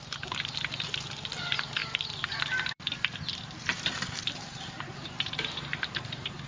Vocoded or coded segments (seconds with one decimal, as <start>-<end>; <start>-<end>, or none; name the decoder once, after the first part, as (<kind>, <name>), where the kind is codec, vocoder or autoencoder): 3.7-6.5 (vocoder, BigVGAN v2)